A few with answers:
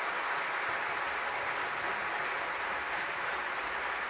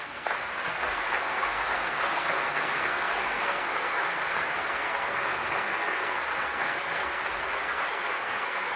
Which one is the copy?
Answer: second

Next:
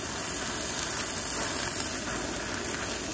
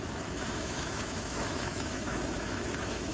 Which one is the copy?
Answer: second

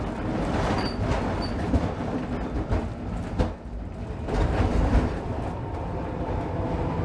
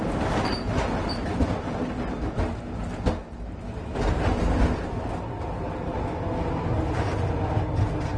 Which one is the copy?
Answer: first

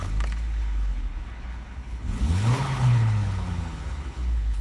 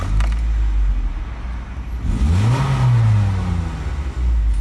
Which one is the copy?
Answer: first